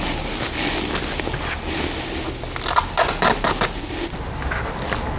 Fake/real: real